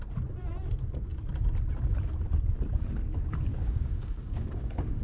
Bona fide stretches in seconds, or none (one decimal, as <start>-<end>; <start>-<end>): 0.0-3.5